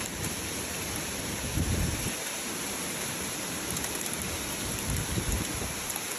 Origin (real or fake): fake